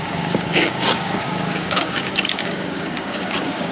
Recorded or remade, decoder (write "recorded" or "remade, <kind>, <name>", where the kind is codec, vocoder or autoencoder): remade, codec, DAC